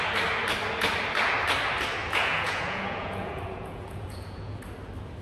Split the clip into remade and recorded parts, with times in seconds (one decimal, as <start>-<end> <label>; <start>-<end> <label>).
0.0-2.0 recorded; 2.0-4.6 remade; 4.6-5.2 recorded

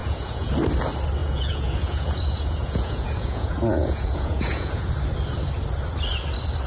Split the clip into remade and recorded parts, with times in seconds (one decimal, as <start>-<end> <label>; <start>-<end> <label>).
0.0-0.5 remade; 0.5-1.2 recorded; 1.2-4.9 remade; 4.9-6.7 recorded